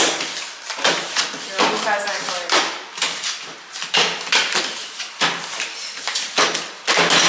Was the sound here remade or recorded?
recorded